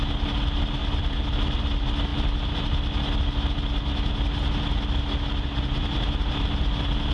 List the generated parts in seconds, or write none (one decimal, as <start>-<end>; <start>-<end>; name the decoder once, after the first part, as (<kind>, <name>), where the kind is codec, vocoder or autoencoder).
0.8-1.6 (vocoder, BigVGAN v2)

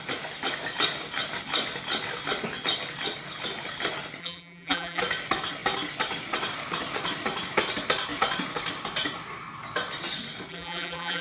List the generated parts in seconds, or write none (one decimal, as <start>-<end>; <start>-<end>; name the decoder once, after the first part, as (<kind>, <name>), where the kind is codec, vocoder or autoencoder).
4.2-5.0 (vocoder, BigVGAN v2); 10.5-11.2

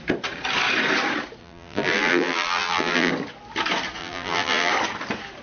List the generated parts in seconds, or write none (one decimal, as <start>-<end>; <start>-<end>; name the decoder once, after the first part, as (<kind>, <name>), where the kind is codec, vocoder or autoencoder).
1.4-3.1 (vocoder, BigVGAN v2); 4.0-4.7

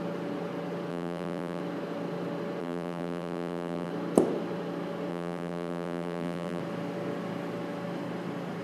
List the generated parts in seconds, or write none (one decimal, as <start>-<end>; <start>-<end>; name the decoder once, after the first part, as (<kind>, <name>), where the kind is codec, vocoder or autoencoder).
0.9-1.6 (vocoder, BigVGAN v2); 2.6-3.9; 5.1-6.6

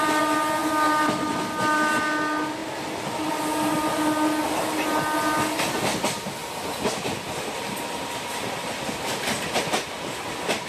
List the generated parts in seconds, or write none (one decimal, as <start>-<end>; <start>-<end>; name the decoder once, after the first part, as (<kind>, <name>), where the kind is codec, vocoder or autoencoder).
6.4-9.9 (vocoder, BigVGAN v2)

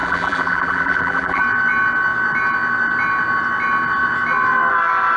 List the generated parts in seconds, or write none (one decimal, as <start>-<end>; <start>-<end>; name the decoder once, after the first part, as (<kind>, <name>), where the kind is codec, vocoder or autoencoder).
0.0-1.4 (vocoder, BigVGAN v2)

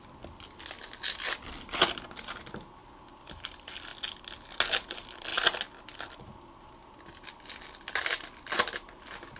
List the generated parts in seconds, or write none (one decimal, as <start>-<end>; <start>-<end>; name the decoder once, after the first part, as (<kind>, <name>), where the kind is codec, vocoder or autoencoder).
2.8-3.4 (vocoder, BigVGAN v2)

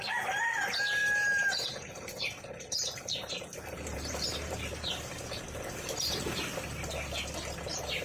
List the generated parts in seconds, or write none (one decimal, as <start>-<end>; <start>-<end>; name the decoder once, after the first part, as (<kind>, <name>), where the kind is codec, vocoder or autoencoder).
1.0-5.4 (vocoder, BigVGAN v2)